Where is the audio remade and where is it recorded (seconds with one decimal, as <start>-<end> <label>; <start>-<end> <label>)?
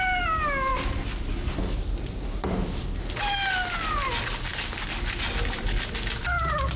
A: 0.0-6.8 recorded